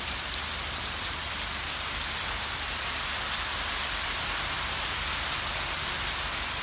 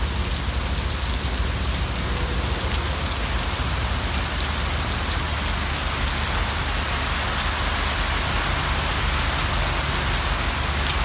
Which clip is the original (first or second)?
second